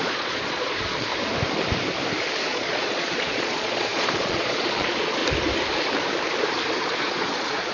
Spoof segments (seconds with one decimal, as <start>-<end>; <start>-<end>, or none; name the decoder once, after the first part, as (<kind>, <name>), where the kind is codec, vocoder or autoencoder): 0.0-1.1 (vocoder, Vocos); 2.5-5.2; 6.8-7.7